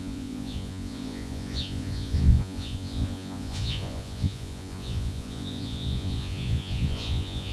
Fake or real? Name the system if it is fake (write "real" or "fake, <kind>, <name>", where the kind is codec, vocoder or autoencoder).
fake, vocoder, Vocos